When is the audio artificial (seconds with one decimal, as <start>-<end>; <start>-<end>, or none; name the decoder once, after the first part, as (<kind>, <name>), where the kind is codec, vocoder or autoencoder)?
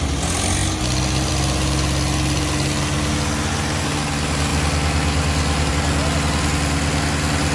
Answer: none